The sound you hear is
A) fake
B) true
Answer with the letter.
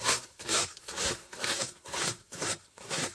A